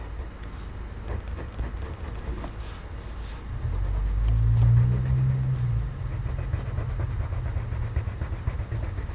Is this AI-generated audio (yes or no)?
no